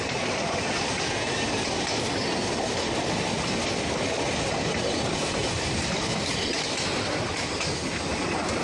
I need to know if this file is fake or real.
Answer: fake